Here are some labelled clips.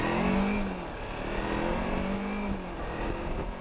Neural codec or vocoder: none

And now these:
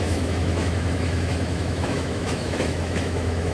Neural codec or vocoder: autoencoder, DAC-VAE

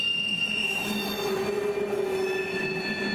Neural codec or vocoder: none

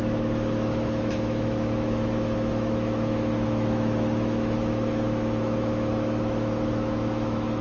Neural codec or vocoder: autoencoder, DAC-VAE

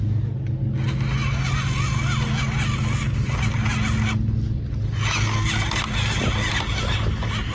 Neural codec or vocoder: none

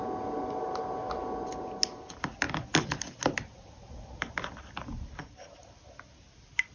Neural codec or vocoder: none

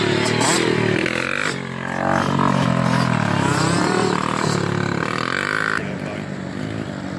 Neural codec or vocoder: none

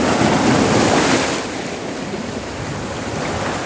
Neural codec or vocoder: none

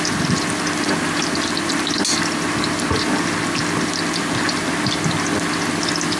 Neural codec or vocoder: none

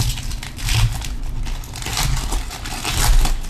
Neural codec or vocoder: none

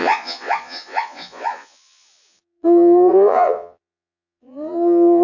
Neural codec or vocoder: vocoder, Vocos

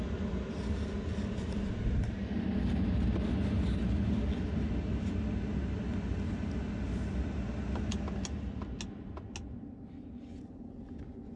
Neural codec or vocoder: none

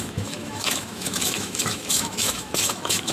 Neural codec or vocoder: autoencoder, DAC-VAE